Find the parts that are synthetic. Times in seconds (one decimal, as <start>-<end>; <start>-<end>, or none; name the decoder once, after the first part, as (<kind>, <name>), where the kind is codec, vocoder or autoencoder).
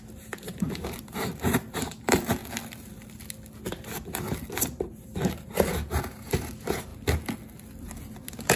0.0-2.4 (vocoder, BigVGAN v2); 5.4-6.9